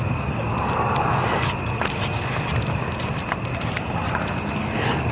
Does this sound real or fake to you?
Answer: real